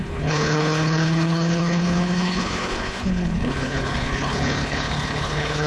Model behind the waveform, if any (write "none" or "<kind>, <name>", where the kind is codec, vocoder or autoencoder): codec, HILCodec